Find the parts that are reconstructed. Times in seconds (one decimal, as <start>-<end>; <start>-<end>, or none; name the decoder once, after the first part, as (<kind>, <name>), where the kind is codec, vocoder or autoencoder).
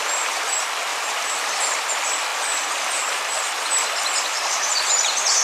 0.9-1.9 (vocoder, BigVGAN v2)